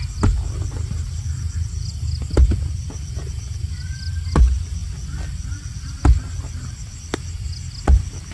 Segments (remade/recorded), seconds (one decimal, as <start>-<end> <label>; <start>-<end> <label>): 0.0-8.3 recorded